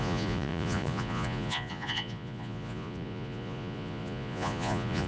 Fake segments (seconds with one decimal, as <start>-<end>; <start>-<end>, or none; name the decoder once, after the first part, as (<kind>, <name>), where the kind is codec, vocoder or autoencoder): 0.0-5.1 (vocoder, Vocos)